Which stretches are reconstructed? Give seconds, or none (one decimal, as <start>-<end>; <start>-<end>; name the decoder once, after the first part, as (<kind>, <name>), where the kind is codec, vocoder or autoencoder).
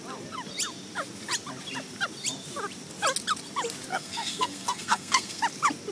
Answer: 3.9-5.4 (codec, SNAC)